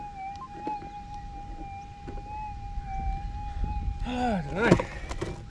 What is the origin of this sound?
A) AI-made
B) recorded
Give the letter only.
B